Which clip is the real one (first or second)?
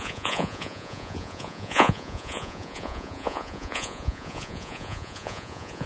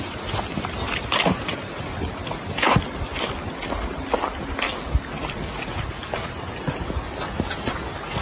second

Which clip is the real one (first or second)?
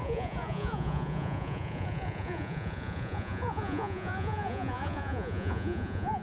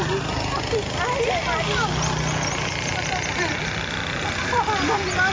second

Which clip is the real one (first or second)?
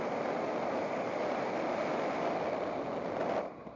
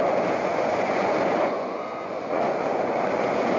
first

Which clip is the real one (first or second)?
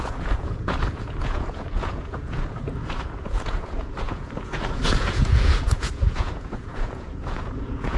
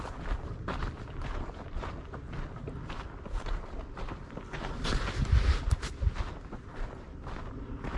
second